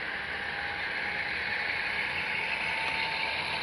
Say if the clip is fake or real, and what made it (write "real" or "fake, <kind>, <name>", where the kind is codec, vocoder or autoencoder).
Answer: real